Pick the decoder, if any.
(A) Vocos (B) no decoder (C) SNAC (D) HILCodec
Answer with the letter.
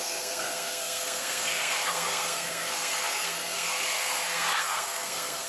C